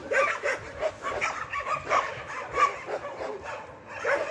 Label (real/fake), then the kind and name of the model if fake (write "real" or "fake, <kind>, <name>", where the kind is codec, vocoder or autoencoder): real